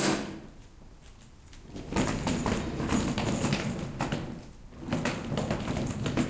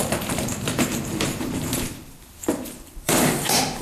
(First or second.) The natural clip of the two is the first